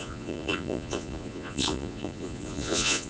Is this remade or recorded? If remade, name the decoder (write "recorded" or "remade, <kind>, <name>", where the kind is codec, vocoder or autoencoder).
remade, vocoder, Vocos